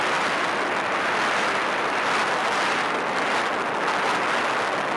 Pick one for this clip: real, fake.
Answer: real